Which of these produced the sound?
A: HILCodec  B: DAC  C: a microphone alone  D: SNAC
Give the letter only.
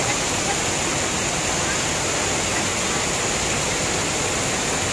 C